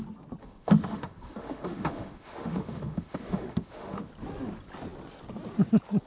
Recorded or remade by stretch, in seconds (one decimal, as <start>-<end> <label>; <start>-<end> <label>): 0.0-0.4 recorded; 0.4-4.1 remade; 4.1-6.1 recorded